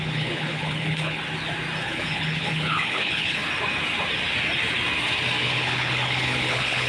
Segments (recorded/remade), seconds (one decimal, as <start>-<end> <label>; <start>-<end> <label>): 0.0-1.2 remade; 1.2-1.8 recorded; 1.8-3.4 remade; 3.4-5.4 recorded; 5.4-6.9 remade